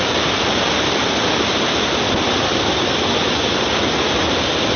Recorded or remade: recorded